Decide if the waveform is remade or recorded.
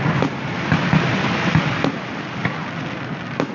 recorded